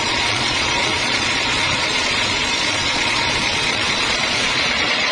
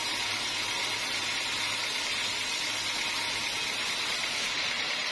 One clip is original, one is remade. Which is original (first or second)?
second